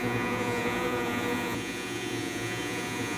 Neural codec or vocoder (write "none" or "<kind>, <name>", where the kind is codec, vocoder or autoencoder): vocoder, Vocos